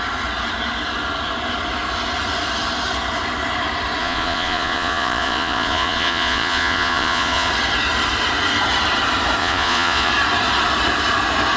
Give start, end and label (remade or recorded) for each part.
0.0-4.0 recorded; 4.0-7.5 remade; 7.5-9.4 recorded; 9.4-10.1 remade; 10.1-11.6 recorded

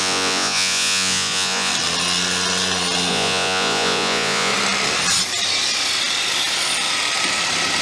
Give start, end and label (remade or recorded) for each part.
0.0-1.7 remade; 1.7-3.1 recorded; 3.1-4.5 remade; 4.5-7.8 recorded

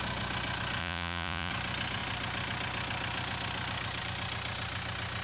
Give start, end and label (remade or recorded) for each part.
0.0-0.8 recorded; 0.8-1.5 remade; 1.5-5.2 recorded

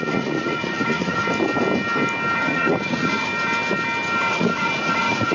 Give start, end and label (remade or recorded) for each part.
0.0-1.2 remade; 1.2-2.4 recorded; 2.4-3.3 remade; 3.3-4.3 recorded; 4.3-5.3 remade

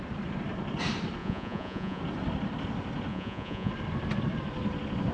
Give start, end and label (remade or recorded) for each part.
0.0-1.2 recorded; 1.2-2.0 remade; 2.0-3.1 recorded; 3.1-3.7 remade; 3.7-5.1 recorded

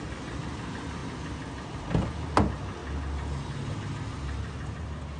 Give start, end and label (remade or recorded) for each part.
0.0-5.2 recorded

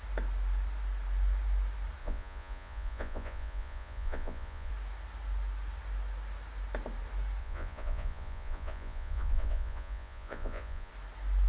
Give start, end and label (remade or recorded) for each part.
0.0-2.0 recorded; 2.0-4.7 remade; 4.7-7.4 recorded; 7.4-10.9 remade; 10.9-11.5 recorded

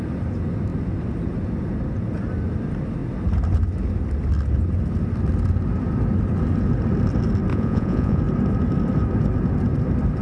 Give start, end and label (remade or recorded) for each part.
0.0-7.5 recorded; 7.5-8.2 remade; 8.2-10.2 recorded